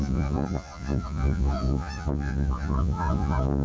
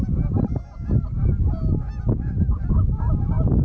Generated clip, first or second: first